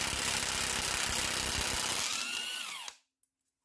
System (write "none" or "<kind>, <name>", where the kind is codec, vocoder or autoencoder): none